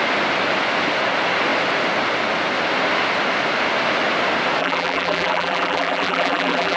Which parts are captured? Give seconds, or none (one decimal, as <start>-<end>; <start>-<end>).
0.0-4.6